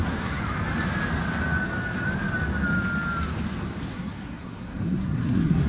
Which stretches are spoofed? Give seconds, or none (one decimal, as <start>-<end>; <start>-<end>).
0.0-0.4; 3.8-5.7

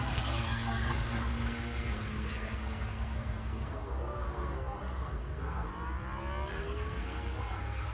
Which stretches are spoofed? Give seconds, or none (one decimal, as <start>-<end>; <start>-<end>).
0.0-5.7; 6.5-7.9

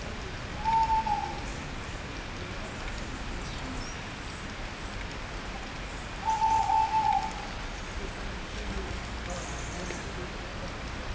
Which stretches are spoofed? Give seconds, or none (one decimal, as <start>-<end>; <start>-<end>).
8.5-9.0

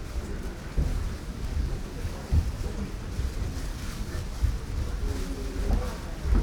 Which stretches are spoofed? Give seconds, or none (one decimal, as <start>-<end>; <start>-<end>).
0.9-2.4; 3.7-4.5

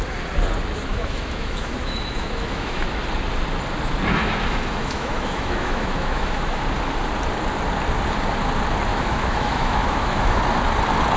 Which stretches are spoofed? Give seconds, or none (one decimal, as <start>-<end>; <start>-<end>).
0.9-3.0; 4.2-6.6; 8.9-10.4